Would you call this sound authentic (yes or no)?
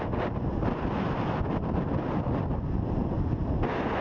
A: yes